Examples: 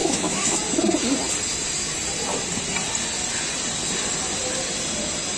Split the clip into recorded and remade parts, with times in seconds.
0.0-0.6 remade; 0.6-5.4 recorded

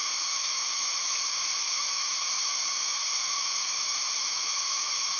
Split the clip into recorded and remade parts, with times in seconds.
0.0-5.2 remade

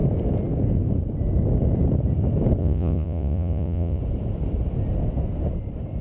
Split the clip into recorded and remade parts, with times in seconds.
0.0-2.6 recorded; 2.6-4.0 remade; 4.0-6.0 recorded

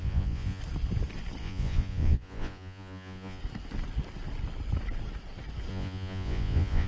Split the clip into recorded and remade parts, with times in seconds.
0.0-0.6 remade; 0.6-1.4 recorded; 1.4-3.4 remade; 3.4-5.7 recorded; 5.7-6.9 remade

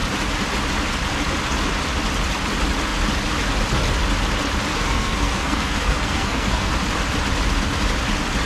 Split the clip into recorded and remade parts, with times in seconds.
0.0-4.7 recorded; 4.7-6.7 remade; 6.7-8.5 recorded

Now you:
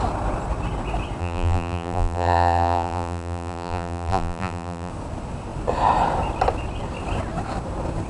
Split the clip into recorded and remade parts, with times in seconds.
0.0-1.2 recorded; 1.2-4.9 remade; 4.9-8.1 recorded